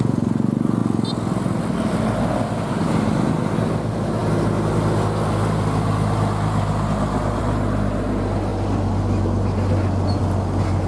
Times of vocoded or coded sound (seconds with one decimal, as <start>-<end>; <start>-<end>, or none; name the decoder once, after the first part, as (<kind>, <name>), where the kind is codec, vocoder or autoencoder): none

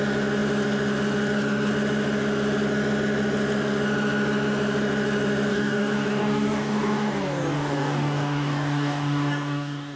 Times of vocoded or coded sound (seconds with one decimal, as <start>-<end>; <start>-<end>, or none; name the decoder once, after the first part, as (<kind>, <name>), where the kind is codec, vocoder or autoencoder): 5.5-10.0 (codec, DAC)

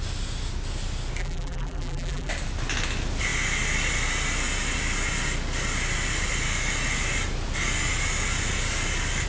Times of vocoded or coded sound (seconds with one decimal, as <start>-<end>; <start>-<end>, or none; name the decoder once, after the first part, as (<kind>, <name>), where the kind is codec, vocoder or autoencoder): 1.2-2.3 (vocoder, BigVGAN v2)

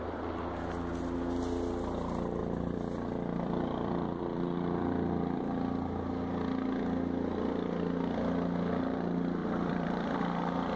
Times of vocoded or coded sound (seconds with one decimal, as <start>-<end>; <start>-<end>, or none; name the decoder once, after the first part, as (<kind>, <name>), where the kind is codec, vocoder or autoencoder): 2.4-5.4 (vocoder, BigVGAN v2); 9.4-10.2